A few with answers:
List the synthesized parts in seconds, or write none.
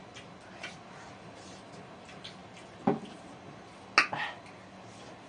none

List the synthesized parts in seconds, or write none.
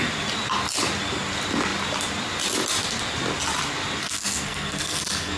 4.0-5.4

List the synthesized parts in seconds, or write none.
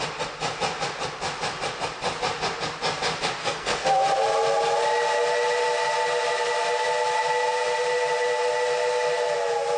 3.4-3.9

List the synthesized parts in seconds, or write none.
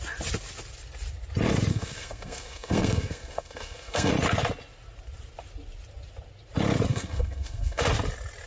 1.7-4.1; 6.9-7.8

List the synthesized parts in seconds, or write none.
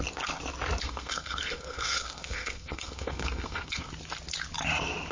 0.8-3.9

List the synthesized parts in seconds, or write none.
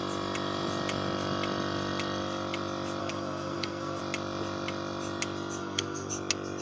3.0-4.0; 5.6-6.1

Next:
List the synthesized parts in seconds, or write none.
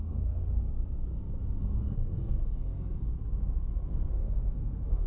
0.0-0.6; 1.6-3.1; 3.8-5.1